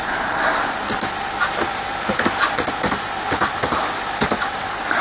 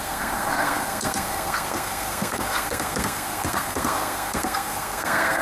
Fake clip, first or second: second